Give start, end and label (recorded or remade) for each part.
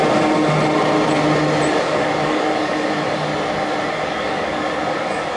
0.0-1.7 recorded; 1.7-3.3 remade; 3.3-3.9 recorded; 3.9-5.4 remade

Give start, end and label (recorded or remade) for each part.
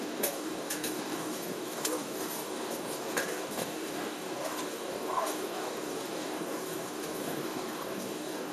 0.0-8.5 remade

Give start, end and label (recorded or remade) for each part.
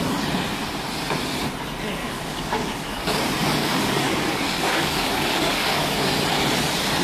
0.0-2.0 recorded; 2.0-3.2 remade; 3.2-3.6 recorded; 3.6-6.1 remade; 6.1-7.0 recorded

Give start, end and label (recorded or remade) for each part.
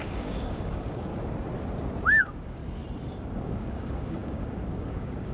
0.0-1.1 remade; 1.1-2.2 recorded; 2.2-2.6 remade; 2.6-3.1 recorded; 3.1-5.3 remade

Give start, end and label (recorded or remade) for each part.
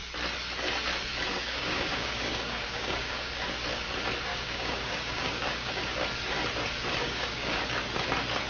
0.0-1.3 recorded; 1.3-3.3 remade; 3.3-4.3 recorded; 4.3-5.8 remade; 5.8-7.0 recorded; 7.0-7.6 remade; 7.6-8.5 recorded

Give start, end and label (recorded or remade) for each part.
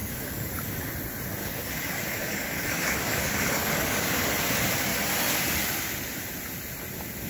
0.0-0.9 remade; 0.9-1.4 recorded; 1.4-4.3 remade; 4.3-7.3 recorded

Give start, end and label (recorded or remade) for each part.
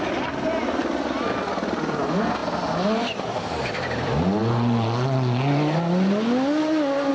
0.0-7.1 recorded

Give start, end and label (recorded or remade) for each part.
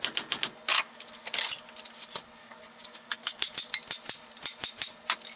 0.0-0.7 recorded; 0.7-1.4 remade; 1.4-2.4 recorded; 2.4-3.7 remade; 3.7-5.4 recorded